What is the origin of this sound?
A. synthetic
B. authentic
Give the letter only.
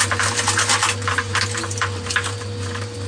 B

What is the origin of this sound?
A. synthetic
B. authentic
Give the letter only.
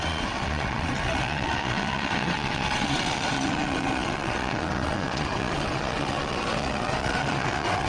A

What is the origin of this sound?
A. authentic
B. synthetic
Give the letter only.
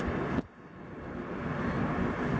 A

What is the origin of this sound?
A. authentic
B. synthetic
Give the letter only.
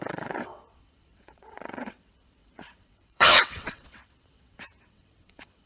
B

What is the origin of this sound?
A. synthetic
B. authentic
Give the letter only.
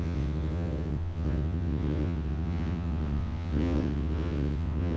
A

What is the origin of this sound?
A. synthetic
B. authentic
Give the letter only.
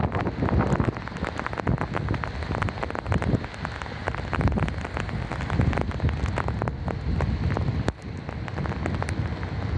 B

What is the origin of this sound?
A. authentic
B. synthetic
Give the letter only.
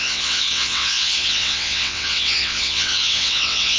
B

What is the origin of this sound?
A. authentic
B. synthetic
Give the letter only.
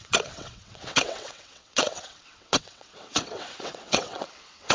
B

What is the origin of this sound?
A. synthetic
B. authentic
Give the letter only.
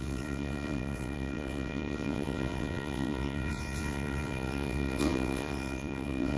A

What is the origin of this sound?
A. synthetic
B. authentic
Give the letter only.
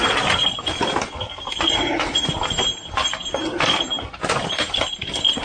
B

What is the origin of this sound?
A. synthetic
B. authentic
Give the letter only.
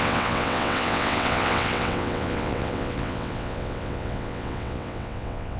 A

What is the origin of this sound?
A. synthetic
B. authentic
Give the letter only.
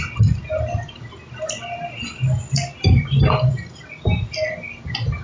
B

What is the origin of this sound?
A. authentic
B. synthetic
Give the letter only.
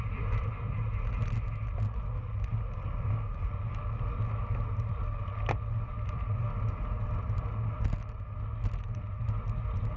A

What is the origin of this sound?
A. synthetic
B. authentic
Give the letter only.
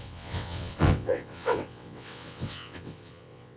A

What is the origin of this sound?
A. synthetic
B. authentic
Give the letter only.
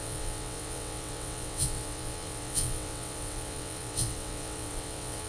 A